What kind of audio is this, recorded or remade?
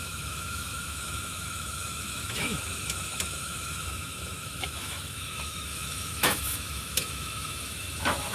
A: remade